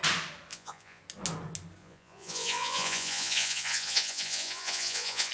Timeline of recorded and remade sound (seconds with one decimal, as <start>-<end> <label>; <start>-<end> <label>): 0.0-0.5 recorded; 0.5-1.0 remade; 1.0-1.8 recorded; 1.8-5.3 remade